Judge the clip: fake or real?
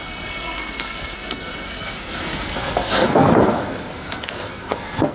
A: fake